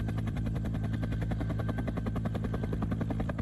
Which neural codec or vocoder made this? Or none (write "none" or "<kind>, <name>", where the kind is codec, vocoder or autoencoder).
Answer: vocoder, BigVGAN v2